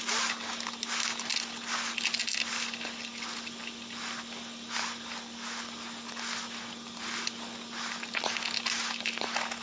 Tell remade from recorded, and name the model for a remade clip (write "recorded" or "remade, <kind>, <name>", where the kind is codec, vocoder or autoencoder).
recorded